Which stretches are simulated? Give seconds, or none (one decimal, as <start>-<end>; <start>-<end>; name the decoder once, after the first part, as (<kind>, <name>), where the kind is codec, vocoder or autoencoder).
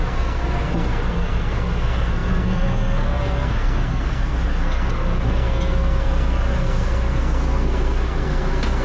0.0-8.8 (codec, SNAC)